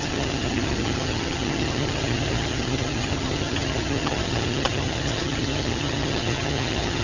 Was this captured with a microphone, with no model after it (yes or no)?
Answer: no